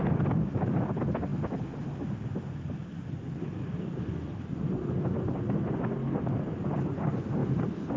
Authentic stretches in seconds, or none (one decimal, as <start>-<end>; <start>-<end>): 0.0-7.4